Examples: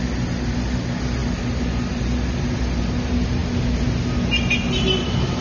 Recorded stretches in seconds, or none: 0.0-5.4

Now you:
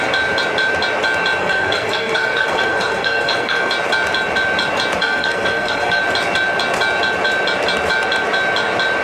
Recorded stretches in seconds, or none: 0.0-1.4; 3.7-5.0; 6.0-9.0